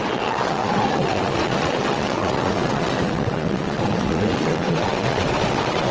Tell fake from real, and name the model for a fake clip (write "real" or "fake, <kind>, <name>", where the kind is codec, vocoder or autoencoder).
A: fake, vocoder, WaveNeXt